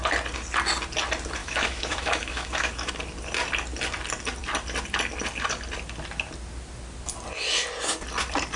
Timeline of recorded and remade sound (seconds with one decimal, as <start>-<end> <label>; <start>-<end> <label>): 0.0-1.4 recorded; 1.4-2.9 remade; 2.9-8.6 recorded